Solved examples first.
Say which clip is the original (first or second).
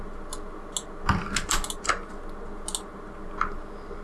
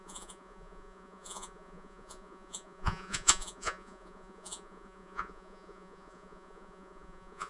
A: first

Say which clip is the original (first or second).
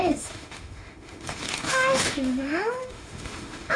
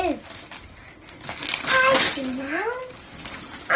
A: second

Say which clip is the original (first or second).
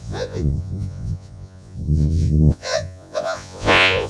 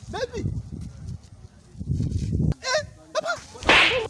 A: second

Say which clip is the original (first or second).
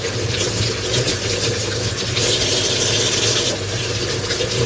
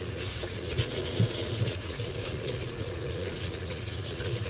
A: first